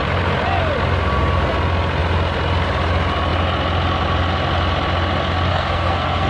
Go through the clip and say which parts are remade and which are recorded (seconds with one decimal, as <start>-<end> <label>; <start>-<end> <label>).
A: 0.0-5.5 recorded; 5.5-6.3 remade